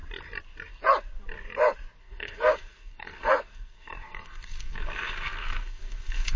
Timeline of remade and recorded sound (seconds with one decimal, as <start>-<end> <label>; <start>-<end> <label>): 0.0-2.0 recorded; 2.0-6.4 remade